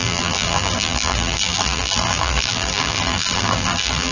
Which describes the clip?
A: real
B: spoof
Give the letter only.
B